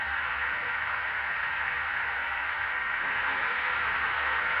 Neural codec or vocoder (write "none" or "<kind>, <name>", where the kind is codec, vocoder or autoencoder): codec, SNAC